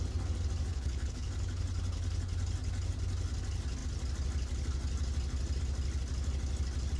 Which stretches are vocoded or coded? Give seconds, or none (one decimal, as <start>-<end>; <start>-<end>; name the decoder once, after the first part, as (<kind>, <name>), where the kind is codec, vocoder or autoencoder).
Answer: 0.7-1.3 (codec, HILCodec)